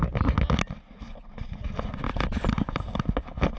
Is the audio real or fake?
real